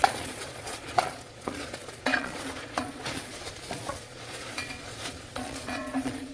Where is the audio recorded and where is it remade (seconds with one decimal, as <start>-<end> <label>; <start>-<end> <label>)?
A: 0.0-6.3 remade